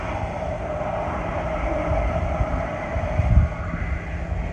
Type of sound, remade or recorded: recorded